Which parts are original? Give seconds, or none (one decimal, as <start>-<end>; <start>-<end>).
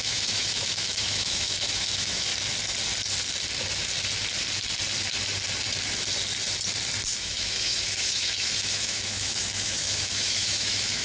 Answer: 2.3-7.2